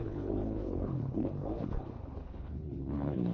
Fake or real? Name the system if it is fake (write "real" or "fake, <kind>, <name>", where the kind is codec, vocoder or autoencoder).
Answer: fake, codec, HILCodec